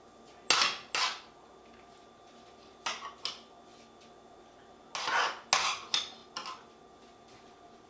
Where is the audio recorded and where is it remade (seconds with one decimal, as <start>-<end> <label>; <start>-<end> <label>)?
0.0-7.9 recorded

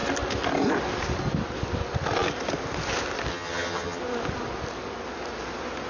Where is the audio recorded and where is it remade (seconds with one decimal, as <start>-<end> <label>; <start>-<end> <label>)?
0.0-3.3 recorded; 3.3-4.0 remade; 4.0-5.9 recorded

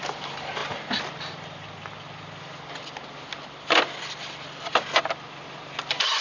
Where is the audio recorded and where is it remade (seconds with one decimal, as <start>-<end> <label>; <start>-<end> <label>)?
0.0-6.2 recorded

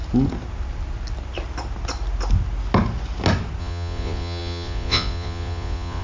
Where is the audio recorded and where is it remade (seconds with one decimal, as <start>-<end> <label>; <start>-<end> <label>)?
0.0-3.6 recorded; 3.6-6.0 remade

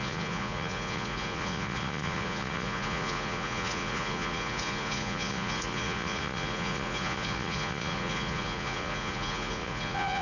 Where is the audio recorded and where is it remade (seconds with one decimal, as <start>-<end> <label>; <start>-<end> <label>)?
0.0-10.2 remade

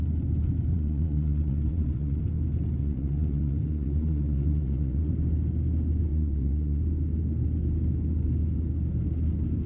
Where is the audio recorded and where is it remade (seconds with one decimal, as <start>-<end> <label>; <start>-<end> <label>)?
0.0-0.7 recorded; 0.7-2.2 remade; 2.2-2.8 recorded; 2.8-5.1 remade; 5.1-6.1 recorded; 6.1-6.8 remade; 6.8-9.7 recorded